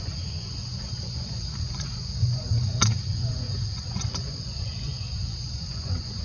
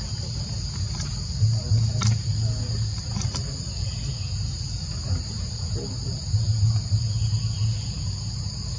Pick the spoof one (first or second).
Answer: first